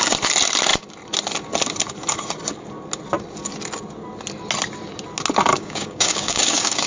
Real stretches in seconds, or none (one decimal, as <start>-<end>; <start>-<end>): 0.0-5.5